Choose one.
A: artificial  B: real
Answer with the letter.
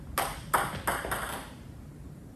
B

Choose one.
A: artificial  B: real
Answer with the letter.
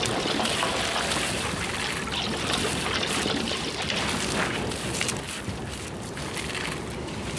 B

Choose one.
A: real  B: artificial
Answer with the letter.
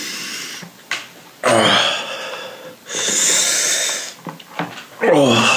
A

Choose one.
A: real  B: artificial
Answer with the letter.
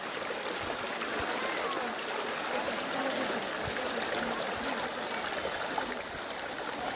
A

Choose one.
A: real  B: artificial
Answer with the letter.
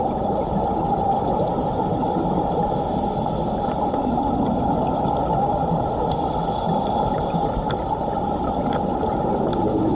A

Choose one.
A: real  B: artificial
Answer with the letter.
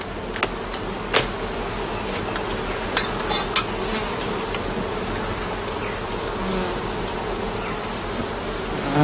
A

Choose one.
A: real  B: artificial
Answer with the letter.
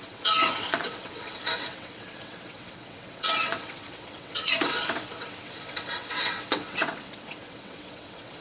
B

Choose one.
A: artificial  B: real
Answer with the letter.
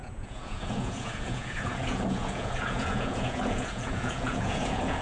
A